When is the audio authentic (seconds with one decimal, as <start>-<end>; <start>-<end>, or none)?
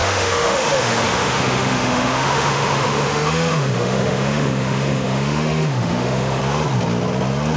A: 6.4-7.6